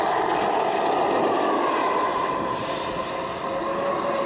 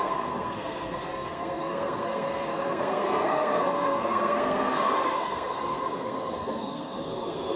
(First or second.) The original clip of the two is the first